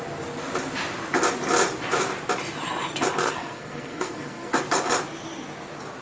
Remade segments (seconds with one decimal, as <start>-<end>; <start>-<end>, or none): 3.2-4.5